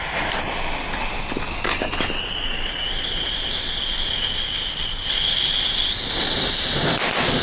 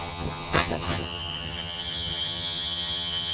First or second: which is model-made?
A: second